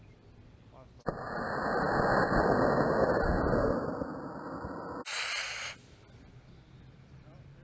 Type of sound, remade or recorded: recorded